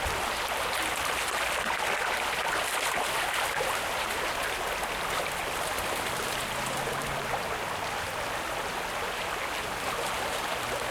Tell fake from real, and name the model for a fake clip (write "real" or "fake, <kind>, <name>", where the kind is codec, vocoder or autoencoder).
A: real